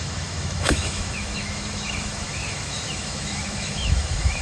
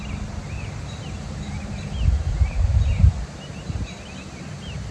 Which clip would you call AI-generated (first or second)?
first